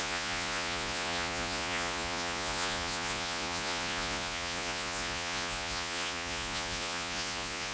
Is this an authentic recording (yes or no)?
no